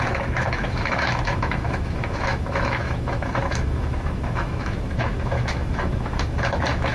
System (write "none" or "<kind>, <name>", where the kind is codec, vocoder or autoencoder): autoencoder, DAC-VAE